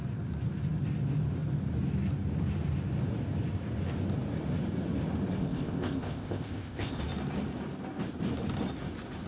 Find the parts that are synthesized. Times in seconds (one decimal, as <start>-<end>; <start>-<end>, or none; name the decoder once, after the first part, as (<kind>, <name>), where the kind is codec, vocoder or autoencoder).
5.4-7.0 (codec, ZipCodec)